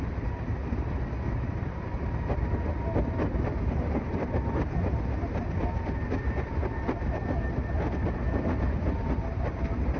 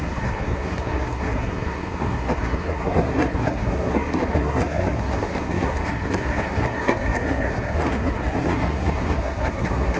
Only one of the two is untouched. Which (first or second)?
first